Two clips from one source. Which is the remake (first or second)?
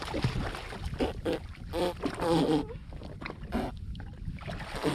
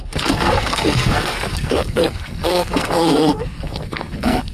second